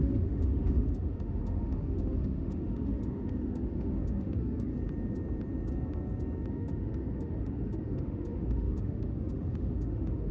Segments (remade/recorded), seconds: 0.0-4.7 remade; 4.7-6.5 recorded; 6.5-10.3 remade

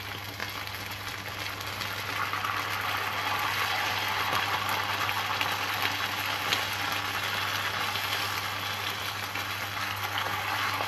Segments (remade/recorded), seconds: 0.0-9.8 recorded; 9.8-10.4 remade; 10.4-10.9 recorded

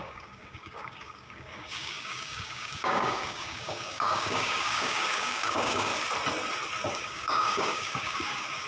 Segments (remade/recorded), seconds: 0.0-5.9 remade; 5.9-6.9 recorded; 6.9-8.7 remade

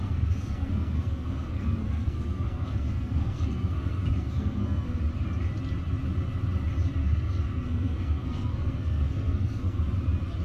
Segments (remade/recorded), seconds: 0.0-5.0 remade; 5.0-7.0 recorded; 7.0-9.8 remade; 9.8-10.4 recorded

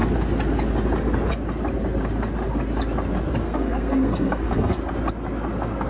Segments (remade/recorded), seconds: 0.0-3.4 recorded; 3.4-4.8 remade; 4.8-5.9 recorded

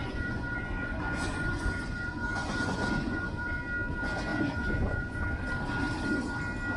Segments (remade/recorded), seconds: 0.0-3.6 remade; 3.6-4.3 recorded; 4.3-5.2 remade; 5.2-6.8 recorded

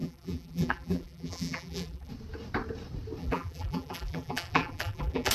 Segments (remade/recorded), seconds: 0.0-2.1 remade; 2.1-3.2 recorded; 3.2-5.3 remade

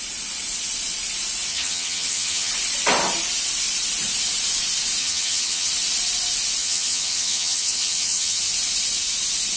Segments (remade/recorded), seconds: 0.0-1.5 recorded; 1.5-2.5 remade; 2.5-5.0 recorded; 5.0-5.7 remade; 5.7-6.6 recorded; 6.6-8.4 remade; 8.4-9.6 recorded